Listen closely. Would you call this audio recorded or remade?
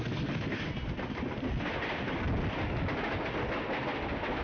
recorded